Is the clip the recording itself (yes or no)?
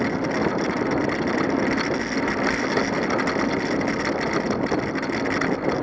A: yes